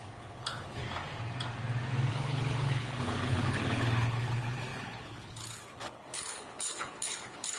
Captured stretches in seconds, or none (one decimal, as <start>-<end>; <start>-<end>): 0.8-2.1